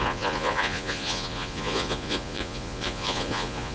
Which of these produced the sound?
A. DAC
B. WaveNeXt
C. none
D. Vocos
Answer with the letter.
D